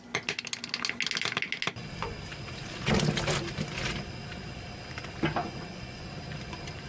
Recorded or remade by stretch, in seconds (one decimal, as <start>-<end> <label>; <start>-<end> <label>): 0.0-5.4 recorded; 5.4-6.1 remade; 6.1-6.9 recorded